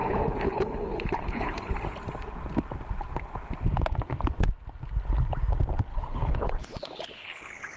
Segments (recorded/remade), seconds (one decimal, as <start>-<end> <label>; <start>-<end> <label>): 0.0-1.7 remade; 1.7-5.9 recorded; 5.9-7.8 remade

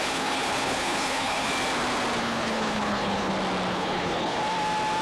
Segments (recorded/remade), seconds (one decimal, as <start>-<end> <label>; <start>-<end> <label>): 0.0-1.5 remade; 1.5-2.2 recorded; 2.2-3.3 remade; 3.3-3.7 recorded; 3.7-4.4 remade; 4.4-5.0 recorded

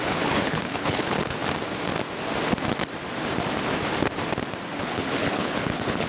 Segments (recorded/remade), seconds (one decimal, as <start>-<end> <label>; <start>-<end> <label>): 0.0-1.4 remade; 1.4-4.8 recorded; 4.8-6.1 remade

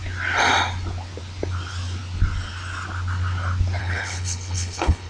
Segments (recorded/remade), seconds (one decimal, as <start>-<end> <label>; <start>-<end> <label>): 0.0-3.8 recorded; 3.8-5.1 remade